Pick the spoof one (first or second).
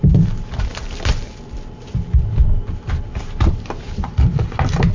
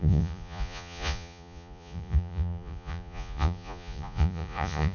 second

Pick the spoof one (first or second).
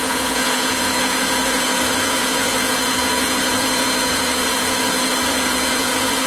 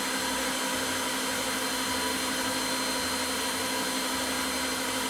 first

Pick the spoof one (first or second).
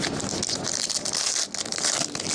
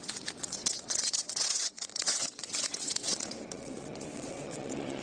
second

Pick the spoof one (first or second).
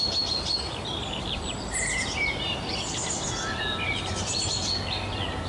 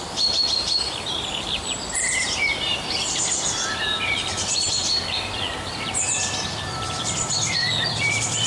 second